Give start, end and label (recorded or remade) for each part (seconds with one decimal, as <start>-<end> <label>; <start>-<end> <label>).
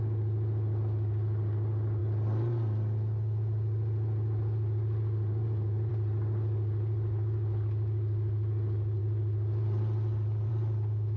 0.0-11.2 recorded